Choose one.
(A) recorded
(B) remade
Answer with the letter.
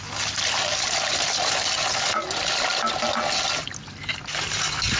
A